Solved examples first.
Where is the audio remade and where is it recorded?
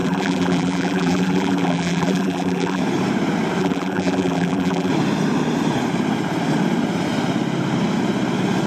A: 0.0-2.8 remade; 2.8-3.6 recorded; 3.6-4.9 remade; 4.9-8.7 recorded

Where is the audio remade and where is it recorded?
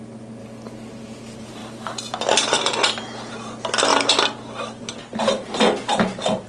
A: 0.0-1.6 recorded; 1.6-3.3 remade; 3.3-6.5 recorded